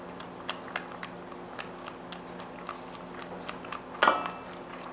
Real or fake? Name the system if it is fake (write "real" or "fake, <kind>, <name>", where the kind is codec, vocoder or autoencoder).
real